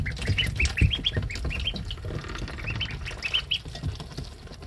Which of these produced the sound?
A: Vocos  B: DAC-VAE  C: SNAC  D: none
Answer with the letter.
D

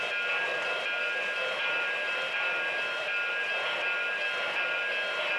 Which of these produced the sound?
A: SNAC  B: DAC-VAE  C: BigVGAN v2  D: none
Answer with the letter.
D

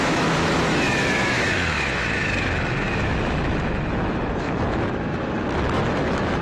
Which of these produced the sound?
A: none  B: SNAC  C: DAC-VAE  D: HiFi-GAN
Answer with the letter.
C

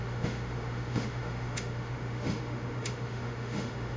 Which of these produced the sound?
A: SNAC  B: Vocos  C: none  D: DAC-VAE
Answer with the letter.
D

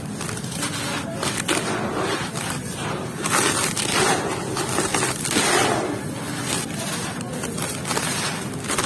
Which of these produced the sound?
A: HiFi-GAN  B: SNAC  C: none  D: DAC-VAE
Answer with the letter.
C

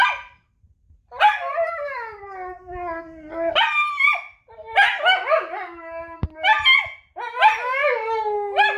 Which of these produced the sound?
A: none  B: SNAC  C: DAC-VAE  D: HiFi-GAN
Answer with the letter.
A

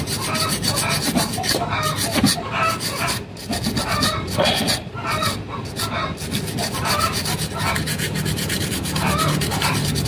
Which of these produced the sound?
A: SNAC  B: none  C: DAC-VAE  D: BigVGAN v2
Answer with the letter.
B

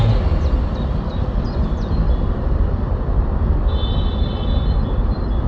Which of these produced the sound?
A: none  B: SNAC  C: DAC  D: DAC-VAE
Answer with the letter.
A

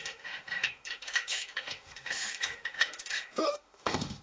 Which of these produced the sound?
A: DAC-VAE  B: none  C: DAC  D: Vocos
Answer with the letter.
A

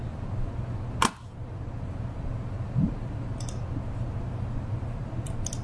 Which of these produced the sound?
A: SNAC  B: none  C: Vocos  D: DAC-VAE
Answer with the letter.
B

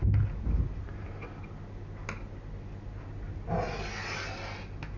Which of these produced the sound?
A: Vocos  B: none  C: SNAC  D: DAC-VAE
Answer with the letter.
B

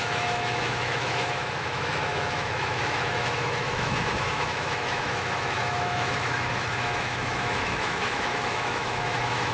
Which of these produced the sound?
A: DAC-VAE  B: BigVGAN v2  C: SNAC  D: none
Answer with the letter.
A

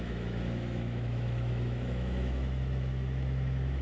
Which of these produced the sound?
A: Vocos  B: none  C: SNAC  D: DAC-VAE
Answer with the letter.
D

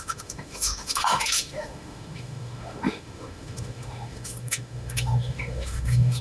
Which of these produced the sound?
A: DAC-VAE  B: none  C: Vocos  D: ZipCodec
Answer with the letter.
A